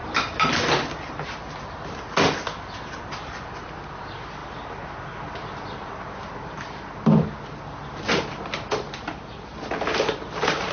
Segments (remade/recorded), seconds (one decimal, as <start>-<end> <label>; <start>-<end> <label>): 0.0-10.7 recorded